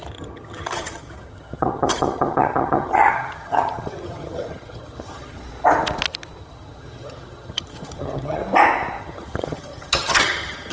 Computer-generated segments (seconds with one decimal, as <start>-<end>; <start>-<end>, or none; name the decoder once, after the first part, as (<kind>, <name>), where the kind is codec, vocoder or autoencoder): 0.0-5.4 (vocoder, HiFi-GAN); 6.4-8.4; 9.0-10.7